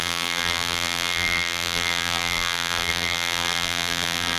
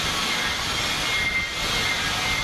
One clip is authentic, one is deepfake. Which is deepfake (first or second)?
first